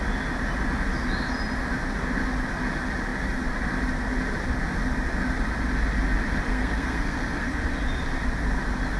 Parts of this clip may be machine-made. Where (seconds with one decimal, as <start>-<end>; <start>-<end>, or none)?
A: 6.5-7.5